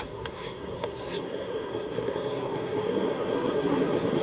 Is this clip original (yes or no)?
no